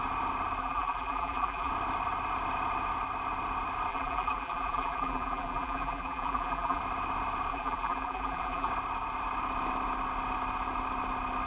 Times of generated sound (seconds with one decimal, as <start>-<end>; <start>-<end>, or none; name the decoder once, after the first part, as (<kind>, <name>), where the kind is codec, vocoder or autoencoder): 0.6-1.7 (vocoder, BigVGAN v2); 3.9-6.8; 7.5-8.7